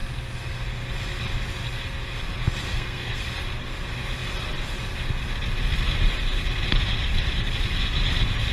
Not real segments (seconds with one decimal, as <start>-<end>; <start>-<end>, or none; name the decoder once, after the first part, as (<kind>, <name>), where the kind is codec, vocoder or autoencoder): 2.7-3.2 (codec, SNAC)